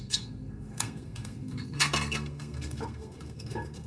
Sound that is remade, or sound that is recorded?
remade